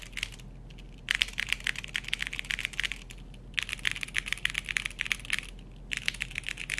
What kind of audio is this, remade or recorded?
recorded